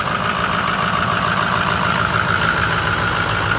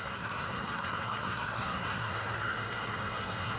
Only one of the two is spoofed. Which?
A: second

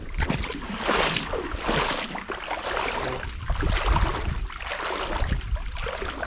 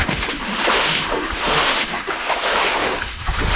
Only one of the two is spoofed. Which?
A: second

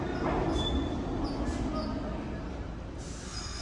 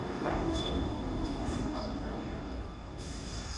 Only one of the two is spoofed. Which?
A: second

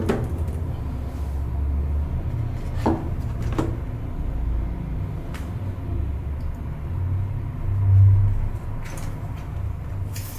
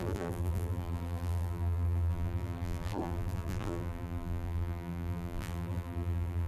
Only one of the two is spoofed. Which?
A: second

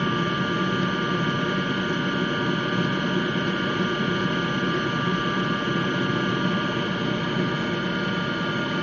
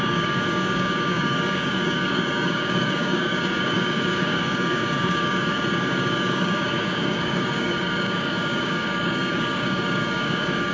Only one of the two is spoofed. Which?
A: second